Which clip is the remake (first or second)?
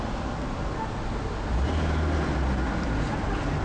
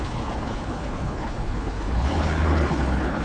second